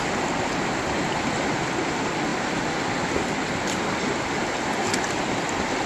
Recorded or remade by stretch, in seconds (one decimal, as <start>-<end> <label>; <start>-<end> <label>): 0.0-5.9 recorded